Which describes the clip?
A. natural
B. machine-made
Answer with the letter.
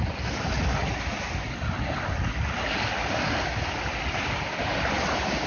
A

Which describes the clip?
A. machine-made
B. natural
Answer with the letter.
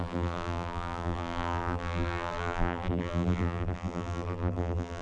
A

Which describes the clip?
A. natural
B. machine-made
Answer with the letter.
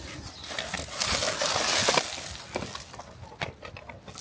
A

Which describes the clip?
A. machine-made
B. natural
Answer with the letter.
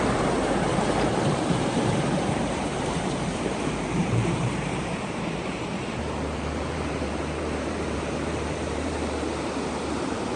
A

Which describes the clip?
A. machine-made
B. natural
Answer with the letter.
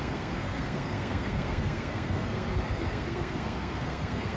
A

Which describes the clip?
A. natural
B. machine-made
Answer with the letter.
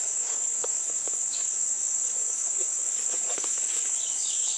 B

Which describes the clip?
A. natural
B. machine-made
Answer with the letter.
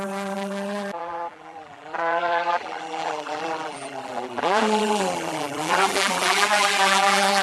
B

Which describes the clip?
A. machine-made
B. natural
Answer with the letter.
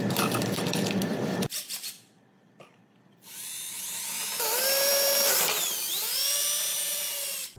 A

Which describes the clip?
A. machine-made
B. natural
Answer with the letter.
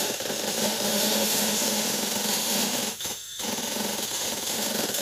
A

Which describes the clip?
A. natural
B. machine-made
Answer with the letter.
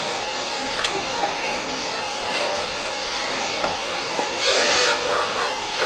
B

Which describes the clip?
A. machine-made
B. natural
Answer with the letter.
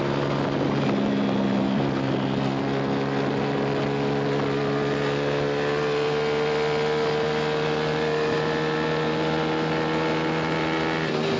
B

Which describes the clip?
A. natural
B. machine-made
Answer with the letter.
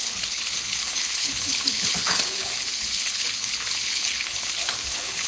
B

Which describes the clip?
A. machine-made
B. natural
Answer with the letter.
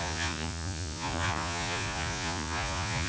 A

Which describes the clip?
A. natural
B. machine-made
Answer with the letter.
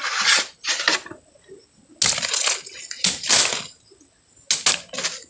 A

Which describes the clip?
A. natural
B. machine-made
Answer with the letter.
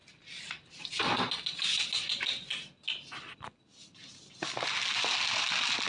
A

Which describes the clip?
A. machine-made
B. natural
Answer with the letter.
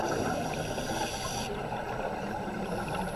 A